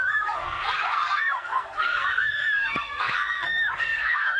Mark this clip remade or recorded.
remade